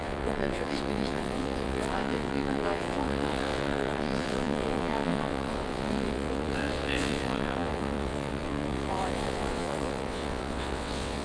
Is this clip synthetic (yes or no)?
yes